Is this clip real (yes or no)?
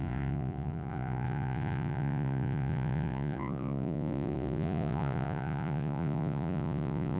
no